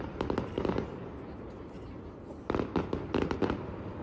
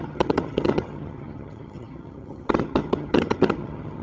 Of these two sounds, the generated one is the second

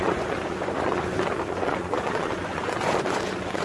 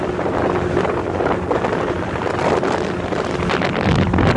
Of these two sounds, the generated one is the first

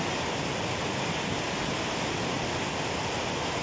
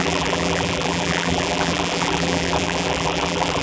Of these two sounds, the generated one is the second